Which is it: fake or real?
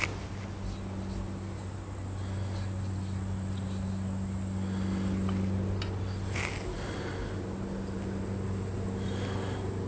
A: real